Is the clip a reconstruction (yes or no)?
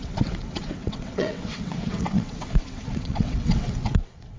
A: yes